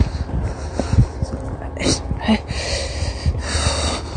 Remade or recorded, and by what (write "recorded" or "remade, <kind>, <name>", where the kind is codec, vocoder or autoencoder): recorded